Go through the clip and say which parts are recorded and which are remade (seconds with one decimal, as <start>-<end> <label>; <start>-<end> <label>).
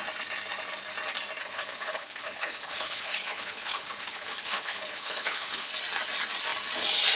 0.0-1.4 recorded; 1.4-5.7 remade; 5.7-7.2 recorded